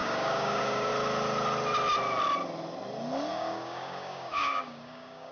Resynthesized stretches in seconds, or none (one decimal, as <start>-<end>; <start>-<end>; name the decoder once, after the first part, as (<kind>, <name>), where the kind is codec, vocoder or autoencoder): 0.0-0.9 (codec, DAC); 3.3-5.3